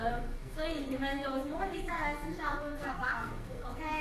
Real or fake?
fake